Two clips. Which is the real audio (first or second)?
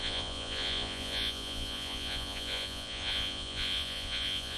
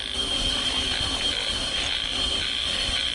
second